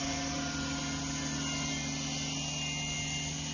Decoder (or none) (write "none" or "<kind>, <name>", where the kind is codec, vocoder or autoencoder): none